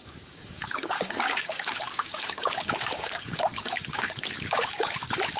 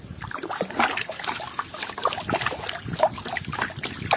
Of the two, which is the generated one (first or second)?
first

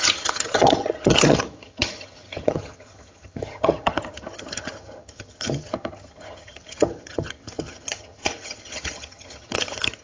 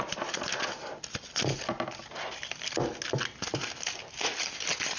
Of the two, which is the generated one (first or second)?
first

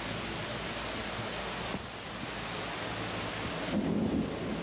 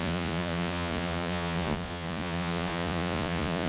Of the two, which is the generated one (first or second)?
second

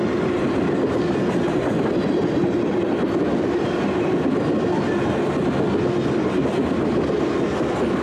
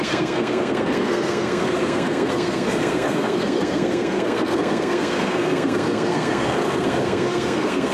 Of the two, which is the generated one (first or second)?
second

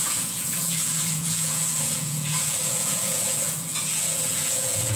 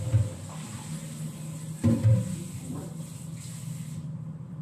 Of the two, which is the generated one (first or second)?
first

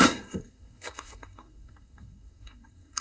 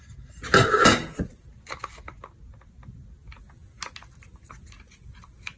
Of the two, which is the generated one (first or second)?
first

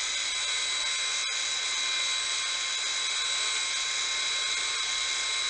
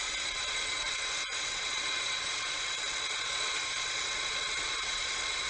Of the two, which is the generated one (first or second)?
second